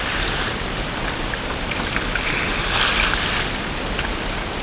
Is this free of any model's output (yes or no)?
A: yes